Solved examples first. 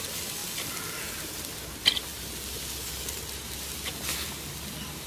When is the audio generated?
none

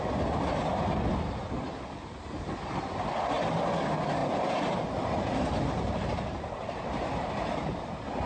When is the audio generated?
4.2-7.8 (vocoder, BigVGAN v2)

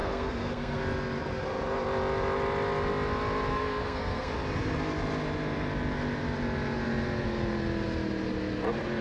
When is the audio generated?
0.0-0.8 (codec, SNAC); 3.5-4.3